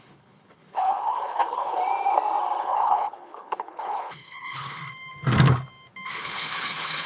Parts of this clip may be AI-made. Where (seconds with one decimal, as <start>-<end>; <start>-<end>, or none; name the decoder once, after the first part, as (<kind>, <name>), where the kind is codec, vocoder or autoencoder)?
0.0-1.8 (codec, HILCodec); 2.6-4.8; 6.1-7.1